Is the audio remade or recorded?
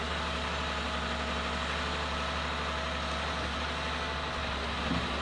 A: recorded